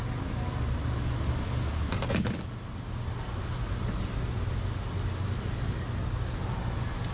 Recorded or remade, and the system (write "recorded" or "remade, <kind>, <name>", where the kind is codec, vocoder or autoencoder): recorded